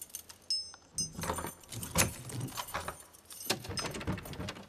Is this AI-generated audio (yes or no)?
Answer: no